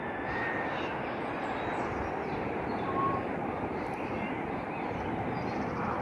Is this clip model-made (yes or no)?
no